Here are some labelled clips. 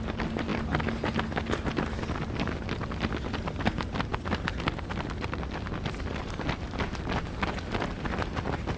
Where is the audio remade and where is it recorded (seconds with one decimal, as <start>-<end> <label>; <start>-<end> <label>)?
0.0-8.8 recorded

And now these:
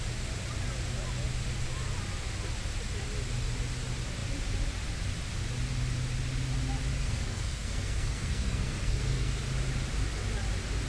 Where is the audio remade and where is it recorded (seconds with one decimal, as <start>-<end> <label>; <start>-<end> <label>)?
0.0-6.9 recorded; 6.9-9.4 remade; 9.4-10.9 recorded

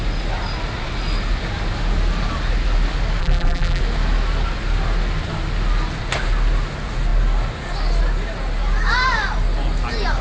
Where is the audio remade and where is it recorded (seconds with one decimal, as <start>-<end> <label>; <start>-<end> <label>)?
0.0-3.2 recorded; 3.2-3.8 remade; 3.8-10.2 recorded

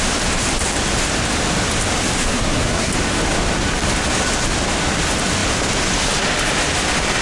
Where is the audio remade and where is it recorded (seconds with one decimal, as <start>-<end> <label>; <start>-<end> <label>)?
0.0-2.3 recorded; 2.3-2.9 remade; 2.9-7.2 recorded

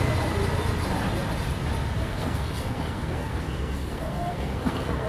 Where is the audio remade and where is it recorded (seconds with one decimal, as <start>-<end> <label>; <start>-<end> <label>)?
0.0-2.0 recorded; 2.0-5.1 remade

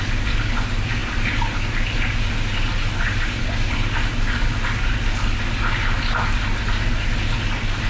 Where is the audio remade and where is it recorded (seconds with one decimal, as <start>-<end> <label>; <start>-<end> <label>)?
0.0-7.9 recorded